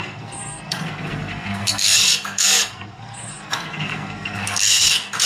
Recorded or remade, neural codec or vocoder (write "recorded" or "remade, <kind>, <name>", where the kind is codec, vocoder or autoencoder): remade, codec, SNAC